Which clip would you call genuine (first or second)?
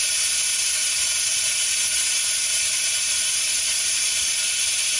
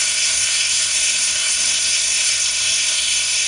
first